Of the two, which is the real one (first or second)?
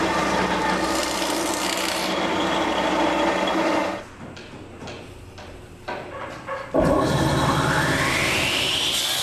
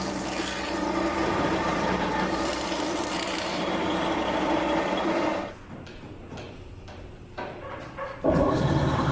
first